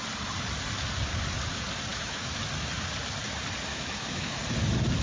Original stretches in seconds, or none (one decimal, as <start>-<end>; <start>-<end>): 0.0-1.9; 2.5-3.7; 4.4-5.0